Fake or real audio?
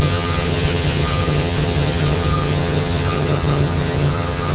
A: fake